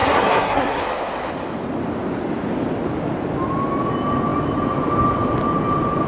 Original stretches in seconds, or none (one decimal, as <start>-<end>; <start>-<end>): 0.8-6.1

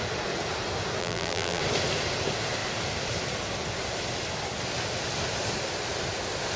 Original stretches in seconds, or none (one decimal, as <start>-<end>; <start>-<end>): 0.0-1.0; 1.6-6.6

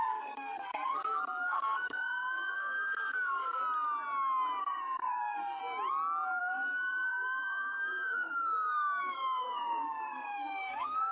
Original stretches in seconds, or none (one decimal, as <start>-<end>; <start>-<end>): 3.6-4.6; 5.6-6.4

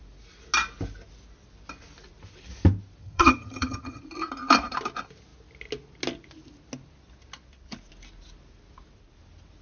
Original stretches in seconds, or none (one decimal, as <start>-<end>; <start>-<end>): 0.0-3.0; 4.0-9.6

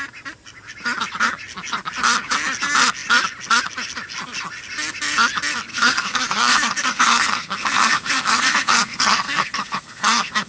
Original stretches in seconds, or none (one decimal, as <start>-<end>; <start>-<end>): 0.0-5.7